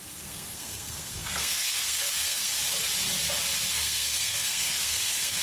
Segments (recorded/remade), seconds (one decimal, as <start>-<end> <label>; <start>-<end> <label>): 0.0-2.5 remade; 2.5-3.7 recorded; 3.7-5.4 remade